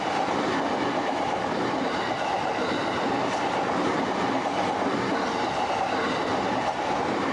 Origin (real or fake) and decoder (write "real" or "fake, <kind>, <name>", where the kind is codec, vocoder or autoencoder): real